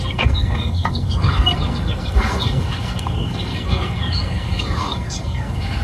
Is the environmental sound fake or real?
fake